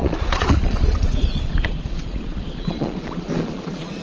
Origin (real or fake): fake